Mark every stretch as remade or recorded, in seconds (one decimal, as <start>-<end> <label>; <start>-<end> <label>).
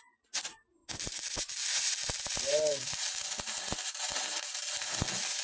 0.0-5.4 recorded